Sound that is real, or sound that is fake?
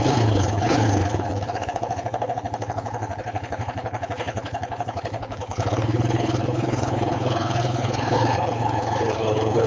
fake